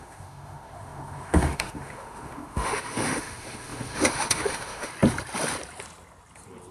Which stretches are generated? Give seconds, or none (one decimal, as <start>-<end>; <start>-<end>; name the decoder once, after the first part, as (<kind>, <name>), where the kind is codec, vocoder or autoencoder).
0.0-4.9 (autoencoder, DAC-VAE)